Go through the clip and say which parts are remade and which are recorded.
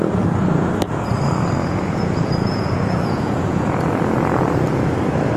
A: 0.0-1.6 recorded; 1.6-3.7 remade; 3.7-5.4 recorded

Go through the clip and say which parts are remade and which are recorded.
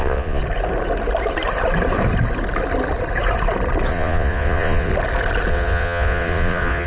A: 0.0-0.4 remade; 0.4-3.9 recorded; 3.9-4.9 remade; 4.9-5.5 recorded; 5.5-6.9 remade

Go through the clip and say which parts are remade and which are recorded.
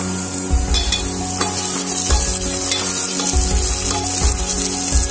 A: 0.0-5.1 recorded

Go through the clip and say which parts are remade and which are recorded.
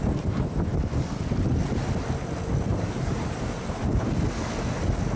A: 0.0-2.7 recorded; 2.7-3.8 remade; 3.8-5.2 recorded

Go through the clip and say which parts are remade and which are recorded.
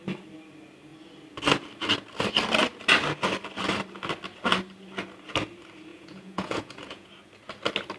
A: 0.0-5.9 recorded; 5.9-7.1 remade; 7.1-8.0 recorded